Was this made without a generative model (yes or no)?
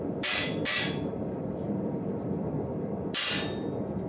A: no